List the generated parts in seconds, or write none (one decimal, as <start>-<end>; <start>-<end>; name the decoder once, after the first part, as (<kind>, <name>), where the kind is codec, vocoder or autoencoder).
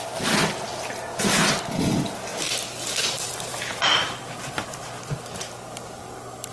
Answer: none